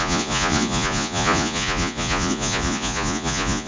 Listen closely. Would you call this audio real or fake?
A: fake